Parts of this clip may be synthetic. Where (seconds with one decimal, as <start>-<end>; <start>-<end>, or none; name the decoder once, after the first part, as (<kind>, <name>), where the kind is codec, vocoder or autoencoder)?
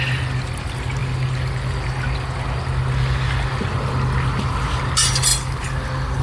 none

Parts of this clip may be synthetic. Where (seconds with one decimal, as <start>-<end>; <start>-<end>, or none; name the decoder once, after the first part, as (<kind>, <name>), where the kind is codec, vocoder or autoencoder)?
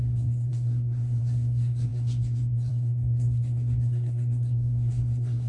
0.0-5.5 (codec, SNAC)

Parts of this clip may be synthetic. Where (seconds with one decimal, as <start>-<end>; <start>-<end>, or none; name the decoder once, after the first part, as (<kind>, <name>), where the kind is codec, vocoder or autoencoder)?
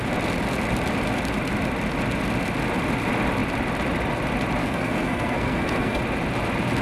4.6-6.0 (codec, SNAC)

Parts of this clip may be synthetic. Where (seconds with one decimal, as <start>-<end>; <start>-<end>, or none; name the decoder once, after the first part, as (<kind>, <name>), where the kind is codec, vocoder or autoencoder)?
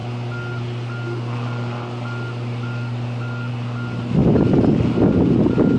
none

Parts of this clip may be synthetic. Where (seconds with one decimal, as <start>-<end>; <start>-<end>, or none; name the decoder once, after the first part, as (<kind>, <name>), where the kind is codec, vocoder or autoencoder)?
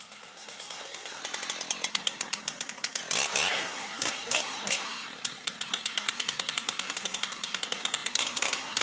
0.0-1.2 (codec, SNAC); 1.9-3.0; 3.5-8.8